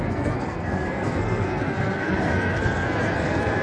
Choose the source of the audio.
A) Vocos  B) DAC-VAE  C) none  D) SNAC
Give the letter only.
D